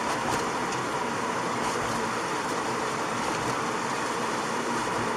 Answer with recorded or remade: remade